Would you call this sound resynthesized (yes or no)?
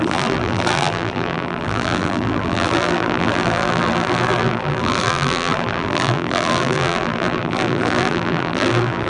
yes